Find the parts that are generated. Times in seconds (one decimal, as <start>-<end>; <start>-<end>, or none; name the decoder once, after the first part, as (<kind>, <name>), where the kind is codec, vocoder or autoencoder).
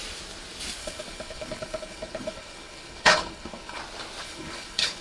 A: 0.8-3.8 (codec, HILCodec); 4.2-5.0